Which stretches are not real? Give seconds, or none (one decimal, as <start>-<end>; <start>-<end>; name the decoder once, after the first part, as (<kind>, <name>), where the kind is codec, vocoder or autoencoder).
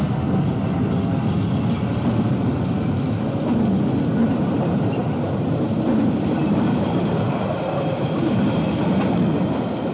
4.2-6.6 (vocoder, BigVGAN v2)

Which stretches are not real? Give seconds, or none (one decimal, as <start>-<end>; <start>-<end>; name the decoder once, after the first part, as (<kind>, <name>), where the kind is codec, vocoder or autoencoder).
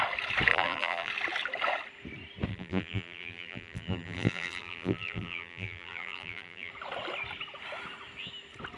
0.5-1.1 (vocoder, BigVGAN v2); 2.5-6.7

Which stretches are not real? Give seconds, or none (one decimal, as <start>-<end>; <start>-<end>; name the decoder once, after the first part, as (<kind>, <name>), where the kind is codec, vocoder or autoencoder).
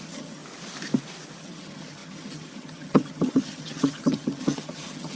0.0-0.4 (vocoder, HiFi-GAN); 1.4-5.2